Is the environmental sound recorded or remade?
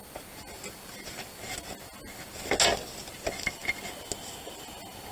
recorded